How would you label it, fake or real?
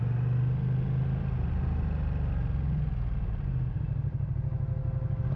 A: real